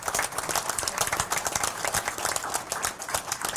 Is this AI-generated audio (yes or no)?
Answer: no